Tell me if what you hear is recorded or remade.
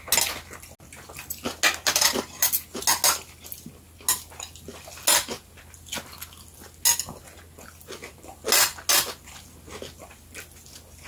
recorded